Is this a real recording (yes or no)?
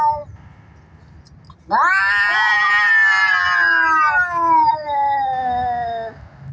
yes